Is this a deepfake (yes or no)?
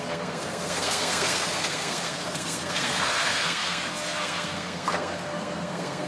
yes